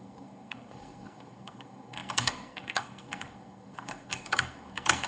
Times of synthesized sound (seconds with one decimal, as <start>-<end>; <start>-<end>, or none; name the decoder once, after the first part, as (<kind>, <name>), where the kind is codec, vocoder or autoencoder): 0.0-5.1 (codec, SNAC)